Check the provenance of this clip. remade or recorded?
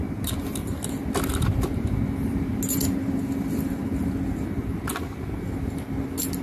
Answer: recorded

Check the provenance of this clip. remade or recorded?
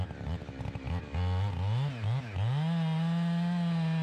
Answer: recorded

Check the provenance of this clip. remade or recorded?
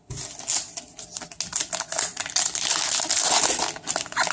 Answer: recorded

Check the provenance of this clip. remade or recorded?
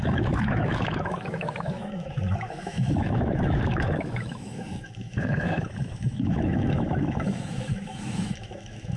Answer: remade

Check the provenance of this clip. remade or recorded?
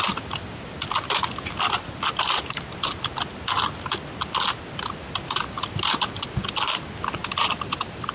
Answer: recorded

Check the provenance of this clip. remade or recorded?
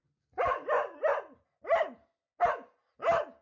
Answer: recorded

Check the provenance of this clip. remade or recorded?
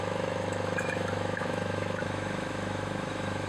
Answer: remade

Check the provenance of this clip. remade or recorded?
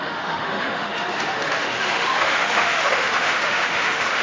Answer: remade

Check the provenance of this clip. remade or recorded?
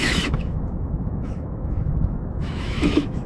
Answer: remade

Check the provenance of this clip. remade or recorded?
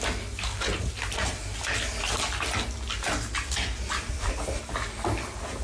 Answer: recorded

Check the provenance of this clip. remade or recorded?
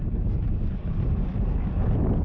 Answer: recorded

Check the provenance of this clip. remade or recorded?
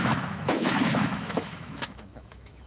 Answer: remade